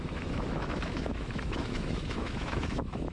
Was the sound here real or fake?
fake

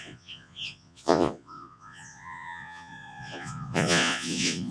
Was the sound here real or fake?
fake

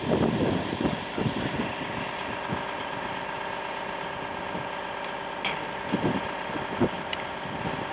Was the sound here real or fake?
real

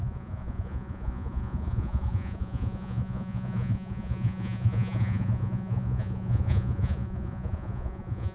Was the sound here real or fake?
fake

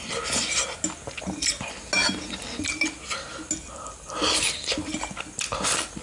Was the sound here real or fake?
real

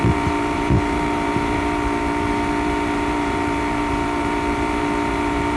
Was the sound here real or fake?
fake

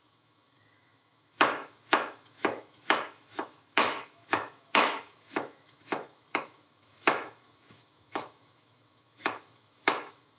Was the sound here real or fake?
fake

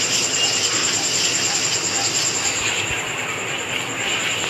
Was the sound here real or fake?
real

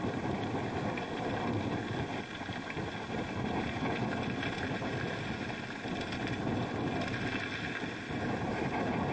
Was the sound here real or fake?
real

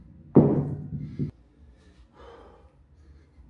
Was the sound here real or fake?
real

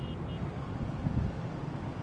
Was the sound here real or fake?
real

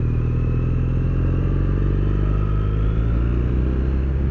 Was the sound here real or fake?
real